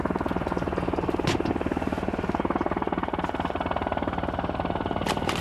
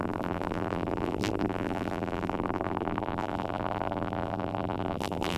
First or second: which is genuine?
first